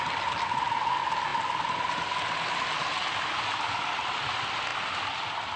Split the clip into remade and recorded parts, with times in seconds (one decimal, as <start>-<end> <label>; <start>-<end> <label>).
0.0-5.6 recorded